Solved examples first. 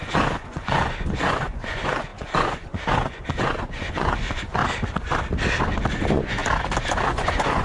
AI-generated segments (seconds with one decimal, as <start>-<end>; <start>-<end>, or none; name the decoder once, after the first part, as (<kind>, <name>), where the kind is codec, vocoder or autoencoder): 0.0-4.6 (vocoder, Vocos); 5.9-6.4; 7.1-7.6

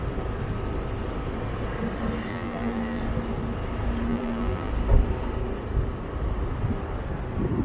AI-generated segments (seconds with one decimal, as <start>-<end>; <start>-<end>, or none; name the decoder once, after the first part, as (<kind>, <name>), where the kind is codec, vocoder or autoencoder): 2.3-3.0 (vocoder, BigVGAN v2); 4.1-4.7

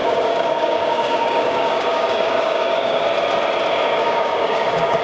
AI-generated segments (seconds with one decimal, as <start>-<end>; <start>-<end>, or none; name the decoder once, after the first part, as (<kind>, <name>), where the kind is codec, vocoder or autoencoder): 0.0-3.0 (codec, DAC); 4.0-5.0

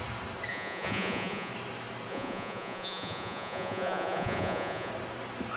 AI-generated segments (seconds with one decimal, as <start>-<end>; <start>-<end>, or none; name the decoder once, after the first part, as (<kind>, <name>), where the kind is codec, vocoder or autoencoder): 0.5-1.5 (vocoder, Vocos); 2.1-4.9